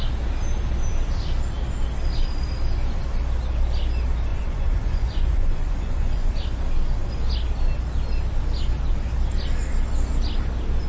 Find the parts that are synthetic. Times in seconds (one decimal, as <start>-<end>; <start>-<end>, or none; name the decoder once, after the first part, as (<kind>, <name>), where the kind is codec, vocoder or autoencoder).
4.3-6.3 (vocoder, Vocos)